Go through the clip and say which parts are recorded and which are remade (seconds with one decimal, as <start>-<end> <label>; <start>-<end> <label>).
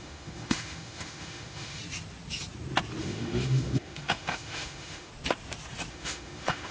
0.0-1.8 remade; 1.8-3.0 recorded; 3.0-5.1 remade; 5.1-5.9 recorded; 5.9-6.7 remade